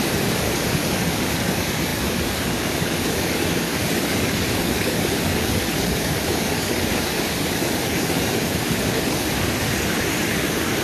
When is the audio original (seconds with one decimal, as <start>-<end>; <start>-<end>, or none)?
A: none